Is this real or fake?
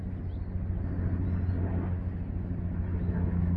real